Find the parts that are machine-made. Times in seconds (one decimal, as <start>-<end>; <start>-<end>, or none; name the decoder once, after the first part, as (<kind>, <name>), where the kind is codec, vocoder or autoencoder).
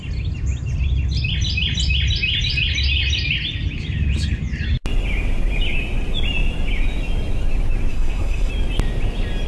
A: 7.9-8.5 (codec, SNAC)